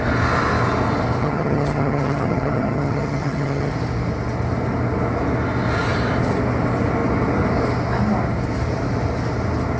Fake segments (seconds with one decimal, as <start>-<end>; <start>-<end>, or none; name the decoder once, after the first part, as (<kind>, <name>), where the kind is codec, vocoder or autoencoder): 1.2-3.7 (vocoder, HiFi-GAN)